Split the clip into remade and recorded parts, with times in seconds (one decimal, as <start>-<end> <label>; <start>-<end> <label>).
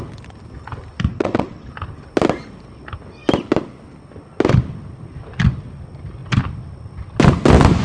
0.0-1.1 recorded; 1.1-1.7 remade; 1.7-7.8 recorded